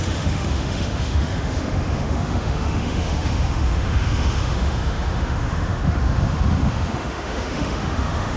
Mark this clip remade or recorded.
remade